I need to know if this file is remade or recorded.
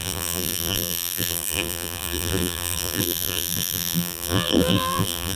remade